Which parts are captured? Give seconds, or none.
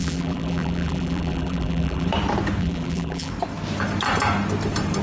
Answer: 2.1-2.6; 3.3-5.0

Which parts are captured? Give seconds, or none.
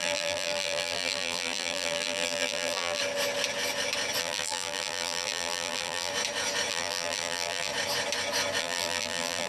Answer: 3.0-4.2; 6.1-6.7; 7.7-8.6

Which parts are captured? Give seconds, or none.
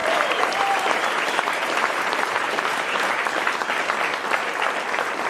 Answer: 3.2-5.3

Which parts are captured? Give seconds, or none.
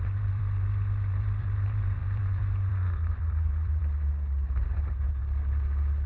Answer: 3.8-4.6; 5.2-6.1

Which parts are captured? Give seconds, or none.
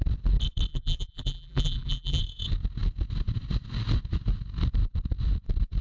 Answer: 0.0-0.7; 2.2-5.8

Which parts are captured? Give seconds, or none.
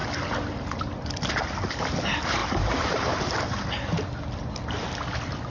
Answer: 0.0-2.4; 4.0-5.5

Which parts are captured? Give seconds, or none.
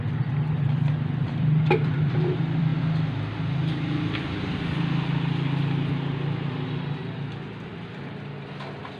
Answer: 2.7-7.7